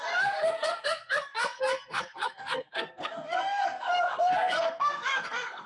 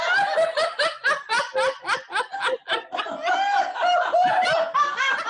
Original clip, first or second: second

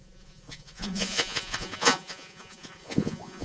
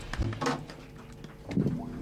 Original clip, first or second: second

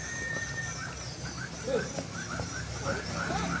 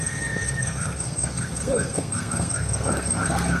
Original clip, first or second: first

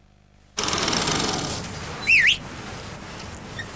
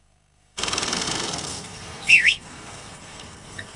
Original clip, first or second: first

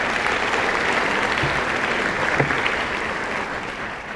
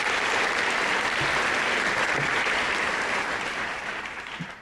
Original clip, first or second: first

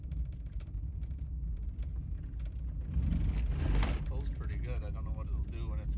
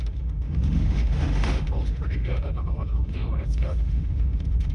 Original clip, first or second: first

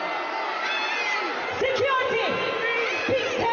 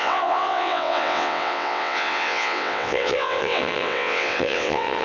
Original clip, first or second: first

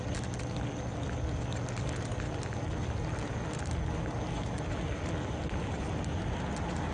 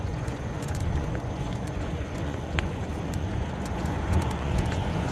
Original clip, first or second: first